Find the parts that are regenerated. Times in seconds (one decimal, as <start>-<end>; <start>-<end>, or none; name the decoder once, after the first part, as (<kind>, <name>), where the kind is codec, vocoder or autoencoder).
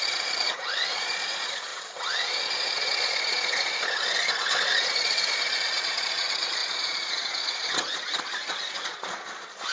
0.0-9.7 (vocoder, Vocos)